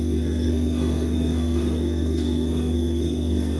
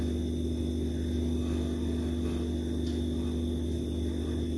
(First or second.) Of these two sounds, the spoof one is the first